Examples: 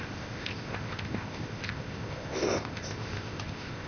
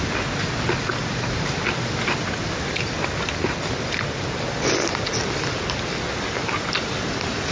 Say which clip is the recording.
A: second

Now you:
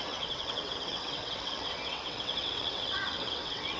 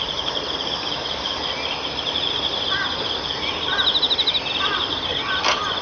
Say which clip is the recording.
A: second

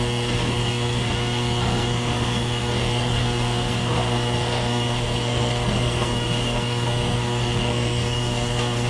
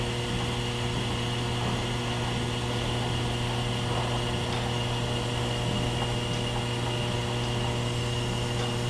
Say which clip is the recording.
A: second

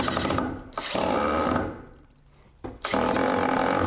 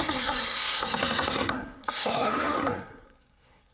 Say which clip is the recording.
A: first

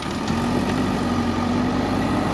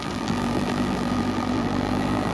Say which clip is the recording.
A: first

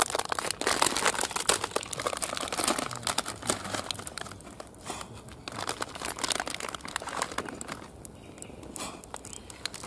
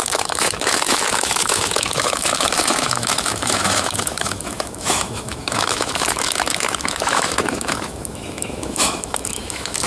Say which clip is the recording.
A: first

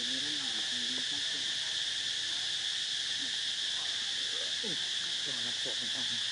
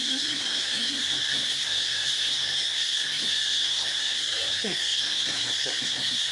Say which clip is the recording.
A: first